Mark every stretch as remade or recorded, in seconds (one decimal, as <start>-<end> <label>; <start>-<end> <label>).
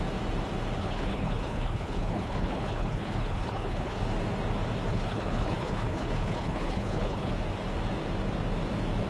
0.0-0.8 recorded; 0.8-4.0 remade; 4.0-4.9 recorded; 4.9-7.3 remade; 7.3-9.1 recorded